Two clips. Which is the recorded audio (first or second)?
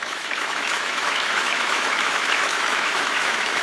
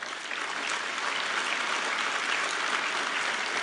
second